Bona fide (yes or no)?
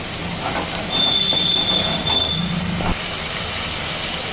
yes